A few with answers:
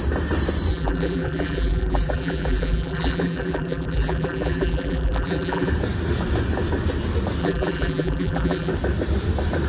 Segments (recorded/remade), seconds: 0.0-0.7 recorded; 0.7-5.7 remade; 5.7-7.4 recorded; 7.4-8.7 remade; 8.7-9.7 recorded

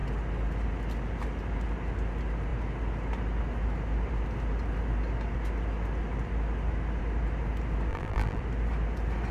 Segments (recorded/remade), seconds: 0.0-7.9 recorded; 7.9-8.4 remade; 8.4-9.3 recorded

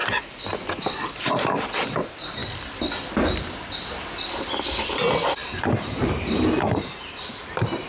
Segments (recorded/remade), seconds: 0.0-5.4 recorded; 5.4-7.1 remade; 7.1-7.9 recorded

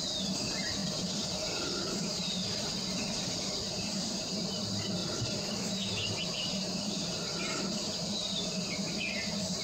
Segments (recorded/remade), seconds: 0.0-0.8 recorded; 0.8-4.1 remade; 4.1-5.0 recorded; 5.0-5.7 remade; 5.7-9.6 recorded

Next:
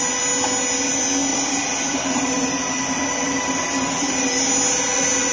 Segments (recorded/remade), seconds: 0.0-1.3 recorded; 1.3-4.4 remade; 4.4-5.3 recorded

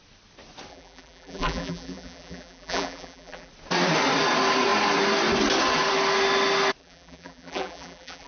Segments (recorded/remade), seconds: 0.0-0.7 recorded; 0.7-3.5 remade; 3.5-6.8 recorded; 6.8-8.3 remade

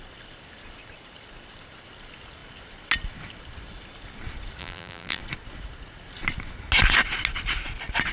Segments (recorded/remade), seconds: 0.0-4.6 recorded; 4.6-5.2 remade; 5.2-8.1 recorded

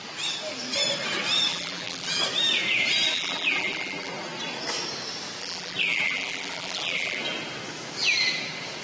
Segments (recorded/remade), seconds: 0.0-1.5 recorded; 1.5-2.2 remade; 2.2-3.1 recorded; 3.1-4.1 remade; 4.1-5.4 recorded; 5.4-7.2 remade; 7.2-8.8 recorded